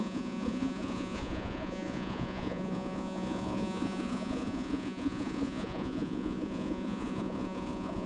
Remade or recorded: remade